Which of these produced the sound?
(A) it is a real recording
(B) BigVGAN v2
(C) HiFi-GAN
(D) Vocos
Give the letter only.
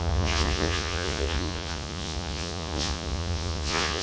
D